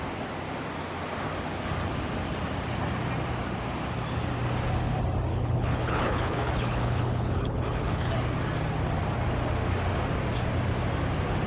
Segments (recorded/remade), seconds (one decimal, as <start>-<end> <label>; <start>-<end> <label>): 0.0-5.3 recorded; 5.3-8.1 remade; 8.1-11.5 recorded